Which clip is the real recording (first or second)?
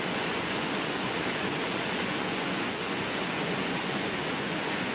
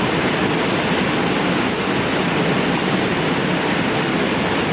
second